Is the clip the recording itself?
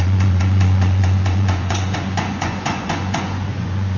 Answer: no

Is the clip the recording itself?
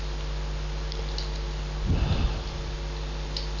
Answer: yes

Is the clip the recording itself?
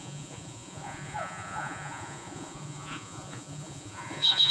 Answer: no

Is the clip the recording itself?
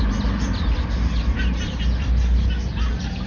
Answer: yes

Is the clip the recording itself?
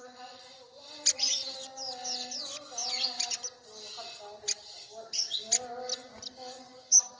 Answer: yes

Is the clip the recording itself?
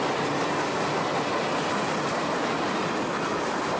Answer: yes